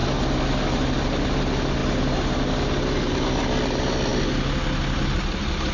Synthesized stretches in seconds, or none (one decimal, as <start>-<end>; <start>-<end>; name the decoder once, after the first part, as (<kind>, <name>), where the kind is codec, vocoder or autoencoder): none

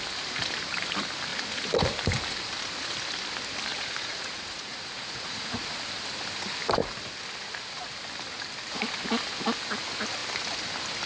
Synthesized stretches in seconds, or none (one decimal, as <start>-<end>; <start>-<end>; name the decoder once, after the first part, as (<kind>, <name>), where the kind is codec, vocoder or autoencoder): 3.7-5.7 (vocoder, Vocos)

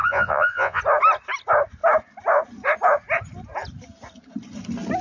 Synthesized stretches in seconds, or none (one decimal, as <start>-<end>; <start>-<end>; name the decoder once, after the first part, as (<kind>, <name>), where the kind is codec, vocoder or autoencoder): 0.0-0.8 (vocoder, Vocos)

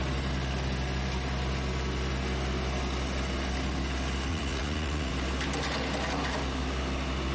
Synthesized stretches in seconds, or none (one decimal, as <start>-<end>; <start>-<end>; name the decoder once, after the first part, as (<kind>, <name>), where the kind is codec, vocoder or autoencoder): 4.3-5.1 (vocoder, Vocos)

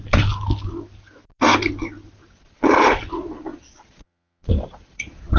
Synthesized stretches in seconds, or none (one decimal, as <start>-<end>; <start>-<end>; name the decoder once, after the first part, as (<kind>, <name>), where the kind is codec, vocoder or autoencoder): 2.2-3.0 (vocoder, Vocos); 3.5-5.4